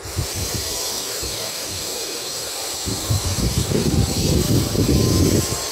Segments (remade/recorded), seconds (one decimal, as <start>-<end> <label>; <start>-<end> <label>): 0.0-0.9 recorded; 0.9-2.5 remade; 2.5-2.9 recorded; 2.9-3.9 remade; 3.9-5.7 recorded